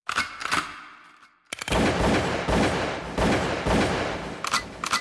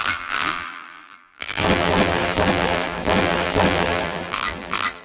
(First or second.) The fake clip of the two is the second